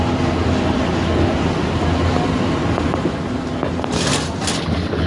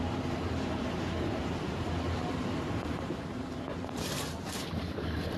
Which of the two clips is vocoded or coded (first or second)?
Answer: second